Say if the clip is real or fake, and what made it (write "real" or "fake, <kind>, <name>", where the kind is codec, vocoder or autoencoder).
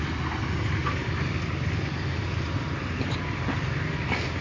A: real